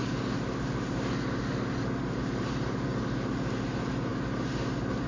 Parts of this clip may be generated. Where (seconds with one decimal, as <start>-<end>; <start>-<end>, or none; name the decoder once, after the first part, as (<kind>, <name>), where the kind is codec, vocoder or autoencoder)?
none

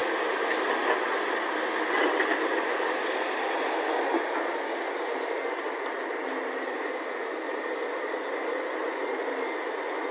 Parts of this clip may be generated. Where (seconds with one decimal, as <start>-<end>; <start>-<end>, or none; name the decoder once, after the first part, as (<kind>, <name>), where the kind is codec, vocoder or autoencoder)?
none

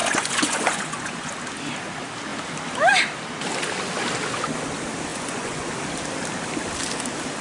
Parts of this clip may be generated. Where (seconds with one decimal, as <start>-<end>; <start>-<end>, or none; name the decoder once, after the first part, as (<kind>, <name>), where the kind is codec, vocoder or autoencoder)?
0.0-1.3 (vocoder, Vocos); 5.1-5.7

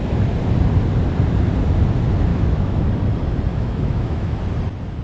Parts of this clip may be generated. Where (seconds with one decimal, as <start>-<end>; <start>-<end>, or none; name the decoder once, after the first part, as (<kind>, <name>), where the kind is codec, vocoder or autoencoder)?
2.3-2.9 (autoencoder, DAC-VAE); 3.5-4.4